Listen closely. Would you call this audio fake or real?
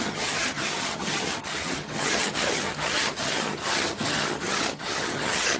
fake